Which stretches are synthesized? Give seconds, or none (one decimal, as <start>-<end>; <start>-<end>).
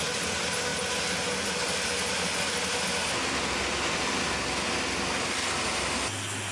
none